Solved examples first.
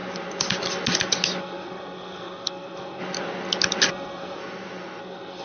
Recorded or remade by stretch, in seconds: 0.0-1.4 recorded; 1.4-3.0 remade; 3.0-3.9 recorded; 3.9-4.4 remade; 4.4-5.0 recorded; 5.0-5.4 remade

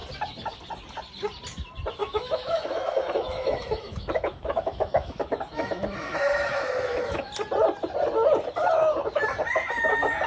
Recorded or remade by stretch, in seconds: 0.0-2.0 recorded; 2.0-7.3 remade; 7.3-10.3 recorded